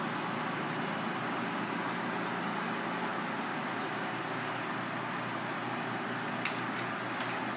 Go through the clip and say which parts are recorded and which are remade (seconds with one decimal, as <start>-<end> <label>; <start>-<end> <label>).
0.0-7.6 recorded